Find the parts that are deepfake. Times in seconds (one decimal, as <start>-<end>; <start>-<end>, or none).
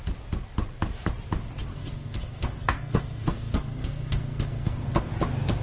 1.7-5.1